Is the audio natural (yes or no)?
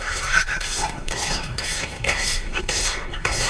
no